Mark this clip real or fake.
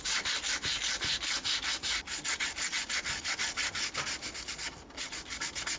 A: real